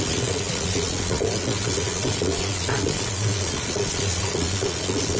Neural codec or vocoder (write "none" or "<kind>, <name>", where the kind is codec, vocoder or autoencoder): vocoder, Vocos